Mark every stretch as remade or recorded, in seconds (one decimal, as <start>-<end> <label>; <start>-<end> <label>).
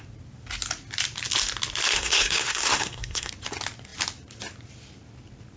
0.0-1.9 recorded; 1.9-3.3 remade; 3.3-5.6 recorded